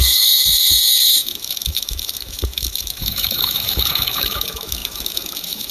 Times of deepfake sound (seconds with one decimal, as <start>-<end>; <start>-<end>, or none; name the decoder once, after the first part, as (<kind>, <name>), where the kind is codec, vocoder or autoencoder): 0.0-5.7 (autoencoder, DAC-VAE)